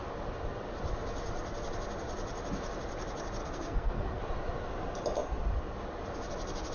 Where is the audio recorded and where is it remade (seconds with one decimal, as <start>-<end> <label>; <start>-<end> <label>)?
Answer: 0.0-3.4 recorded; 3.4-4.2 remade; 4.2-6.7 recorded